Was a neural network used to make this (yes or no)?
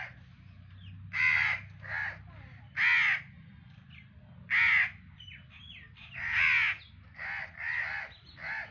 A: no